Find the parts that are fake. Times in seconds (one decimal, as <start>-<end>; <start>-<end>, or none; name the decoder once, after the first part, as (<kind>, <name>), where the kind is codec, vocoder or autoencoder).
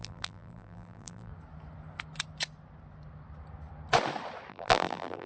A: 0.0-1.3 (vocoder, BigVGAN v2); 4.5-5.3